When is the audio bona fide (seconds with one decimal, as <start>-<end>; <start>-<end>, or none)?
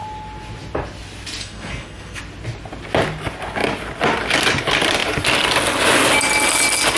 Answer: 0.0-1.4; 2.2-7.0